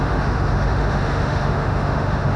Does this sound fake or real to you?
fake